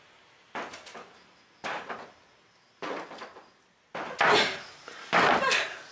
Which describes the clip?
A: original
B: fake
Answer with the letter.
A